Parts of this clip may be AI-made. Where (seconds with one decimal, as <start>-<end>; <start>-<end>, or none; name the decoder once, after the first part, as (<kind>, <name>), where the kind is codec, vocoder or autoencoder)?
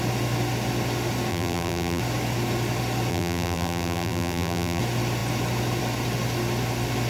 1.3-2.0 (vocoder, BigVGAN v2); 3.1-4.8